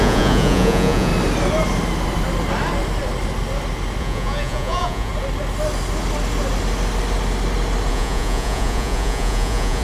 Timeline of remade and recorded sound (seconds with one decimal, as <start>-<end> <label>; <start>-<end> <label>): 0.0-1.1 remade; 1.1-4.0 recorded; 4.0-5.1 remade; 5.1-7.9 recorded; 7.9-9.8 remade